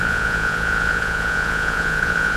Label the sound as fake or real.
fake